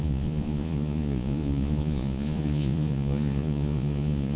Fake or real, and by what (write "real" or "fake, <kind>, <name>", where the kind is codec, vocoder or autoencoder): fake, vocoder, Vocos